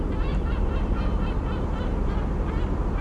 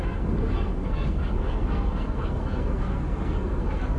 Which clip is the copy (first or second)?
second